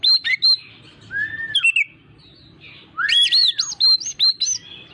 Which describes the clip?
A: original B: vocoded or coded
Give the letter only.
A